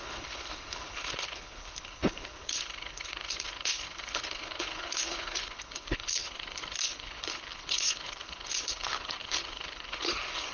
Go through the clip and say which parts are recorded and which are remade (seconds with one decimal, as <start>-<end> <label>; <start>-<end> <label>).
0.0-10.5 remade

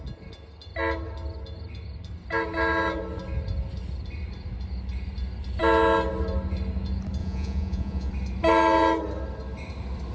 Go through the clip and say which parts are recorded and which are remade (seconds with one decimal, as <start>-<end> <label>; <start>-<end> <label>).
0.0-7.2 recorded; 7.2-8.1 remade; 8.1-10.1 recorded

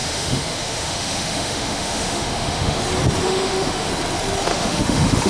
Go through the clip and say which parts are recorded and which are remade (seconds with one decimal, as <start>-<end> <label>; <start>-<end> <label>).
0.0-2.8 remade; 2.8-3.2 recorded; 3.2-3.9 remade; 3.9-4.5 recorded; 4.5-5.3 remade